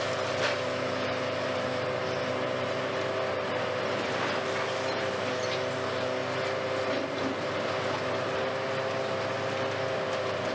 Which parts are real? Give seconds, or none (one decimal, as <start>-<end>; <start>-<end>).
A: 0.0-10.5